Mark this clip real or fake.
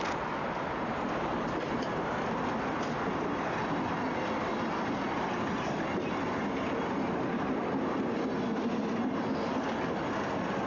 real